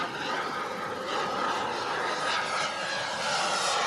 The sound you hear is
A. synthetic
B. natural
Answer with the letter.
B